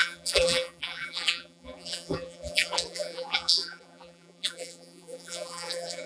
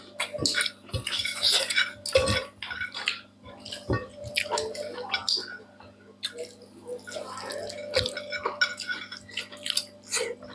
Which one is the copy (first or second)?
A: first